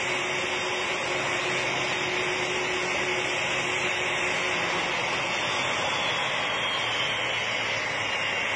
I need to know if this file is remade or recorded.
recorded